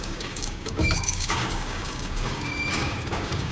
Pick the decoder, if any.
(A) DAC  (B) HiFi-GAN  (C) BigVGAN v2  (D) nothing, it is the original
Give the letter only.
A